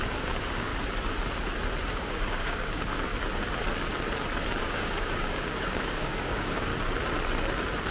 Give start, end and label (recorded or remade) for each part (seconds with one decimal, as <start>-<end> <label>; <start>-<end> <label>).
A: 0.0-0.7 remade; 0.7-1.9 recorded; 1.9-3.1 remade; 3.1-4.6 recorded; 4.6-6.7 remade; 6.7-7.9 recorded